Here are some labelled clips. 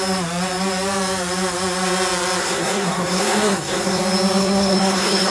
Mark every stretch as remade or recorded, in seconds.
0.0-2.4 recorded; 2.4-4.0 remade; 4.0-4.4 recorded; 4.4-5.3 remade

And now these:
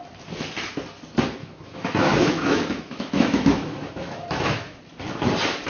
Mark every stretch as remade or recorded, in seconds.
0.0-1.4 recorded; 1.4-4.8 remade; 4.8-5.7 recorded